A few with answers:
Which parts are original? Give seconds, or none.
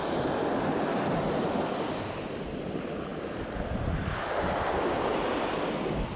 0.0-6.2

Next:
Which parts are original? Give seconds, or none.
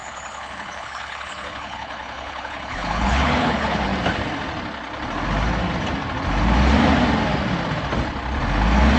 3.9-9.0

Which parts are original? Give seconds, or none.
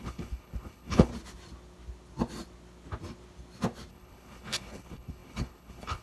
1.1-3.9